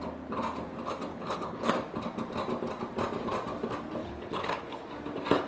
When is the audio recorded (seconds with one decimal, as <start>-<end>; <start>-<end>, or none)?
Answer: 0.0-1.1; 1.7-4.0; 4.8-5.5